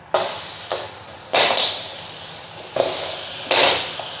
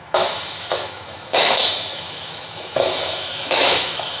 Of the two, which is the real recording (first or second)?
first